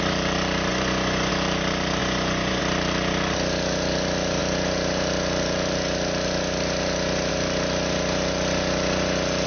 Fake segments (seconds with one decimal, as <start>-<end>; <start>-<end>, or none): 0.7-1.3; 2.0-2.6